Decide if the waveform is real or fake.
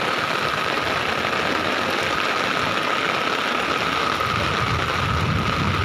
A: real